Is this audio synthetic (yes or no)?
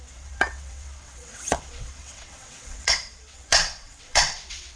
yes